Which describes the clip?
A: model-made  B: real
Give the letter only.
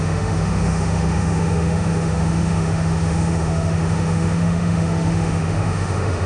A